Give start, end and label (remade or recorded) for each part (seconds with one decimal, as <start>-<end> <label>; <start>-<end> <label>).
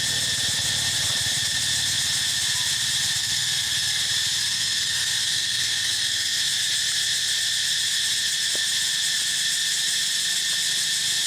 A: 0.0-3.2 recorded; 3.2-4.0 remade; 4.0-4.4 recorded; 4.4-6.4 remade; 6.4-11.3 recorded